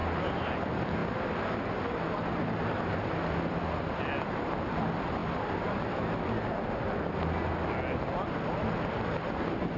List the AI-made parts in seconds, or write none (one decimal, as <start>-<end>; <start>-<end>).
none